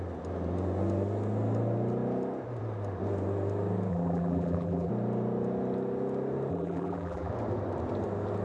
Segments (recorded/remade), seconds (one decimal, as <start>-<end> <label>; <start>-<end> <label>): 0.0-3.9 recorded; 3.9-4.9 remade; 4.9-6.5 recorded; 6.5-7.3 remade; 7.3-8.4 recorded